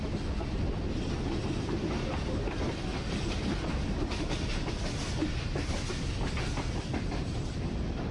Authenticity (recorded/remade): recorded